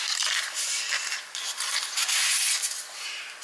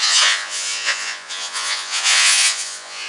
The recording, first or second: first